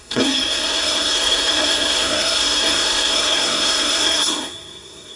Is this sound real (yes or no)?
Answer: no